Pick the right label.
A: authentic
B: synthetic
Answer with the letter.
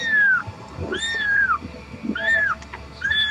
B